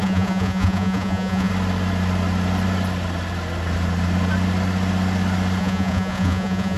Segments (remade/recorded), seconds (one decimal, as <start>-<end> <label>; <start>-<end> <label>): 0.0-1.5 remade; 1.5-5.6 recorded; 5.6-6.8 remade